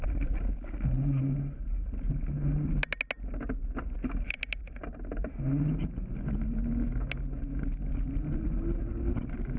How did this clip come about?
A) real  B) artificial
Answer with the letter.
A